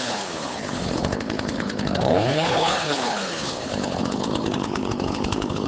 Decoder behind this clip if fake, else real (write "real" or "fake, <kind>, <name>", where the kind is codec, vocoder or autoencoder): fake, codec, HILCodec